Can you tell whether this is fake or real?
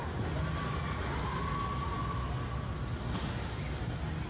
real